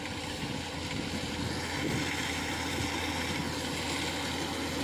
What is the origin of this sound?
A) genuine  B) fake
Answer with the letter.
A